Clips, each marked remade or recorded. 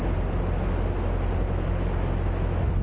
recorded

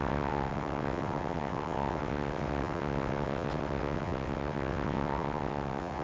remade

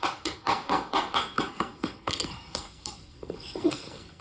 remade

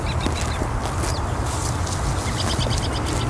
recorded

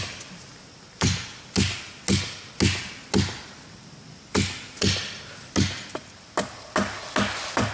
recorded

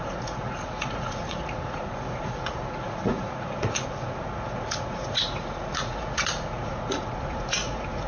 remade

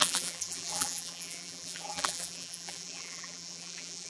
remade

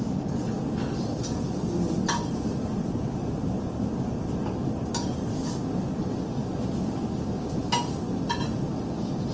recorded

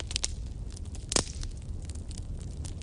recorded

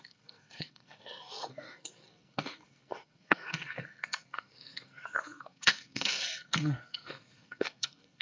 remade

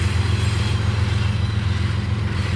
recorded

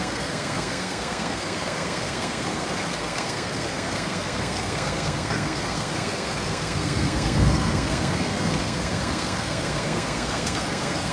remade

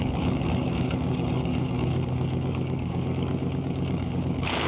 remade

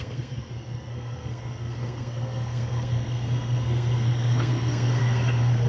remade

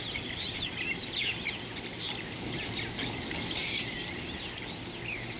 recorded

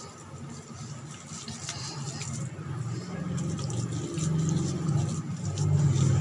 recorded